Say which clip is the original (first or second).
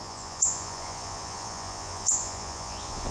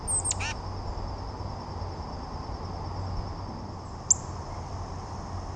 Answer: second